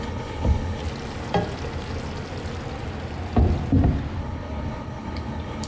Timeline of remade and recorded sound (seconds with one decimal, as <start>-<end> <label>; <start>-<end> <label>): 0.0-0.8 remade; 0.8-4.2 recorded; 4.2-5.7 remade